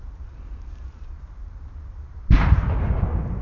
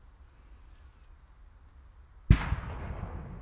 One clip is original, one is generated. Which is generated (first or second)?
first